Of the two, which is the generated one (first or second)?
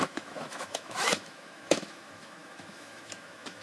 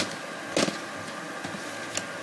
first